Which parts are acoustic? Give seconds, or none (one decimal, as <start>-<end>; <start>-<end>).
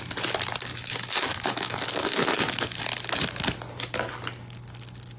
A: 0.0-0.7; 2.8-5.2